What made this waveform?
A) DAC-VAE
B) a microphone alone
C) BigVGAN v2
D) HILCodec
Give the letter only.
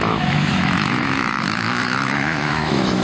A